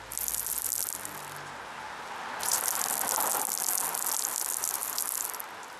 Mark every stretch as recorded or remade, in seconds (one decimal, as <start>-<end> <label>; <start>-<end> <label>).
0.0-5.8 recorded